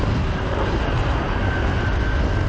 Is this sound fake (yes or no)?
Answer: no